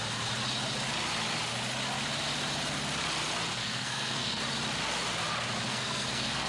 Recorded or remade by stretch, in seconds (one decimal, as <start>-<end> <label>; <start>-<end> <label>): 0.0-3.5 recorded; 3.5-4.4 remade; 4.4-5.7 recorded; 5.7-6.5 remade